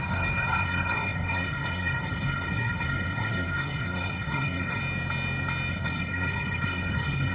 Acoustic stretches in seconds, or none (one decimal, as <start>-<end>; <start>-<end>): 4.8-5.7